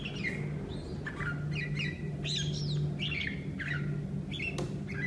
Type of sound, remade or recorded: recorded